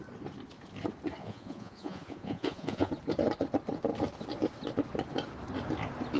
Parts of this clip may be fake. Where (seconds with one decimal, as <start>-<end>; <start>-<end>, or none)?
1.2-2.9